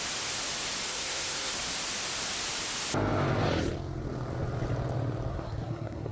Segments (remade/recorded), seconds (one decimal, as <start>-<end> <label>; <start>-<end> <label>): 0.0-0.9 recorded; 0.9-1.5 remade; 1.5-5.3 recorded; 5.3-6.1 remade